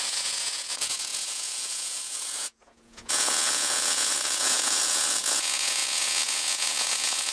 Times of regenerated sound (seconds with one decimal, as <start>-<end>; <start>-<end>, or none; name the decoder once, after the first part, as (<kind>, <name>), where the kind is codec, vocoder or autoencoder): 0.0-7.3 (vocoder, Vocos)